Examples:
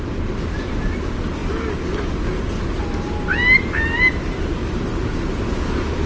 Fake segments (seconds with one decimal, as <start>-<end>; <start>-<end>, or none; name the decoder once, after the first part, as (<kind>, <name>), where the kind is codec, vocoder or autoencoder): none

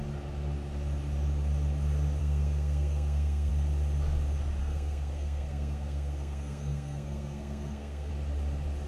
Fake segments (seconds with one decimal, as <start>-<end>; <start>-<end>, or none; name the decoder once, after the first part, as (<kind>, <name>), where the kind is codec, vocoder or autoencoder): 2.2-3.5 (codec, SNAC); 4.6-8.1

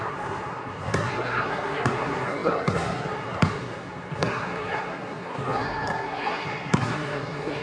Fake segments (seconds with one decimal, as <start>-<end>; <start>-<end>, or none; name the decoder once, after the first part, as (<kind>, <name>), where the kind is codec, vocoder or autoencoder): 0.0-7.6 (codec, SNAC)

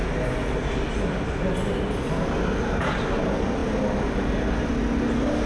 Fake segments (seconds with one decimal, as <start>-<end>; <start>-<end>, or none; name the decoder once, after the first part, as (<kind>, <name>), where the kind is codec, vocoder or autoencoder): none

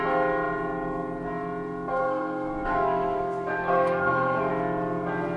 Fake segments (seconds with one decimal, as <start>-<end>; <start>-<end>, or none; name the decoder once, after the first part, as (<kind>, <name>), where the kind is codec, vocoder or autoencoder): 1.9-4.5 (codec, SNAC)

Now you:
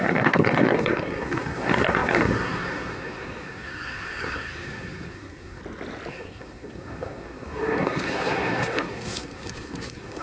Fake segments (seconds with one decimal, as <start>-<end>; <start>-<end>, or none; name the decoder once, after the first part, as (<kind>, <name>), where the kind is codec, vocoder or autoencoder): 0.0-5.6 (codec, SNAC); 6.1-10.2